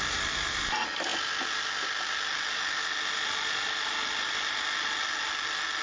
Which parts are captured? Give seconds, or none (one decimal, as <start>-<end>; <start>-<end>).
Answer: 0.0-5.8